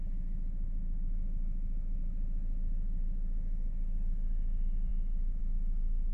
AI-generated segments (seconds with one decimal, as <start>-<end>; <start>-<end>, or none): none

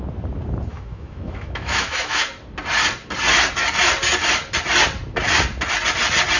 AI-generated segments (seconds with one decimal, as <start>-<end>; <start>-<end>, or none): 0.7-2.2

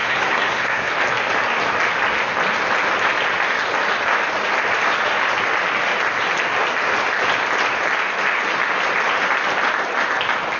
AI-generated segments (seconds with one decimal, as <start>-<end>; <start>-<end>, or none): 0.0-0.9

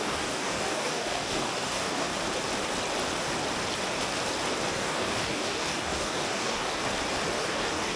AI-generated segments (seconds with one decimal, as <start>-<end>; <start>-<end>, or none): 0.0-2.1; 4.7-6.8; 7.3-8.0